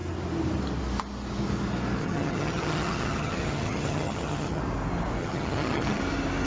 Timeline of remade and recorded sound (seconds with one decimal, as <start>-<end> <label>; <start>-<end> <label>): 0.0-2.0 recorded; 2.0-4.6 remade; 4.6-5.2 recorded; 5.2-6.0 remade; 6.0-6.5 recorded